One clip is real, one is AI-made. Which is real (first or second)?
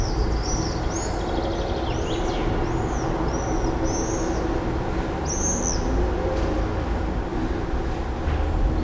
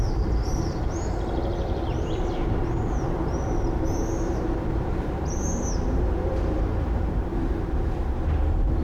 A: first